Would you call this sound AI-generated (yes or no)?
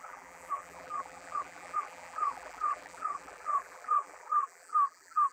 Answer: yes